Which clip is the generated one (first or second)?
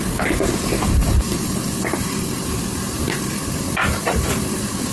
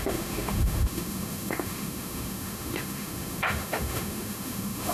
second